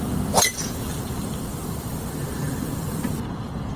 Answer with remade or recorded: remade